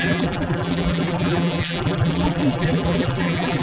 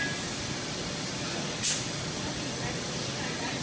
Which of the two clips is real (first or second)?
second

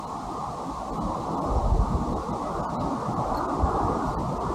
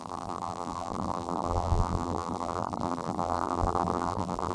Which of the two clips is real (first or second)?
first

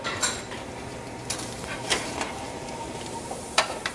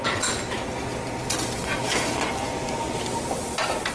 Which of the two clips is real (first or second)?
second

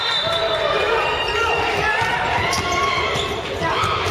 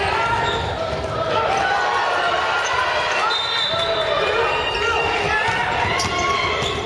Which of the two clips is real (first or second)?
second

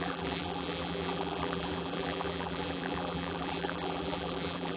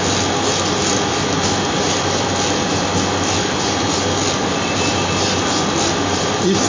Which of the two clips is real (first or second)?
second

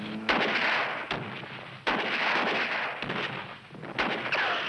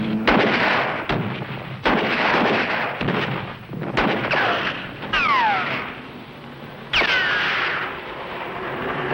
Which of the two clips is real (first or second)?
first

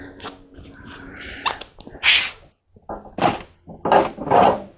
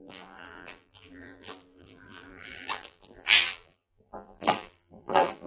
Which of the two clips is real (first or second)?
first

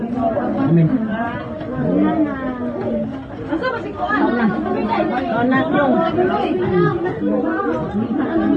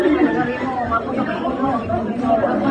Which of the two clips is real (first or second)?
first